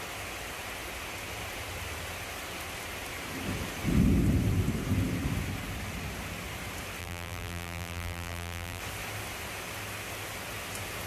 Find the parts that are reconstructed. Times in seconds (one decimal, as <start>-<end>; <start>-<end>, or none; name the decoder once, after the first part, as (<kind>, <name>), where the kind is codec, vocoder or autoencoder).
7.0-8.8 (vocoder, BigVGAN v2)